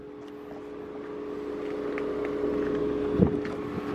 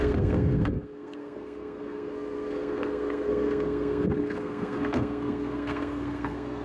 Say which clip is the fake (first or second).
second